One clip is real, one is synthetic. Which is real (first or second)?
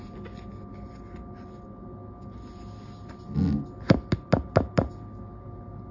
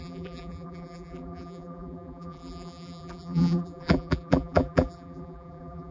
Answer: first